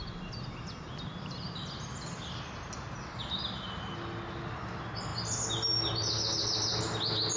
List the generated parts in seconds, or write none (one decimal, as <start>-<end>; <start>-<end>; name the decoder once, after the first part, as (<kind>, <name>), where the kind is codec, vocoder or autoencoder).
none